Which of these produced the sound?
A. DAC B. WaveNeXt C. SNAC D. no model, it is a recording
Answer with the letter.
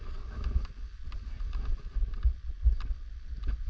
D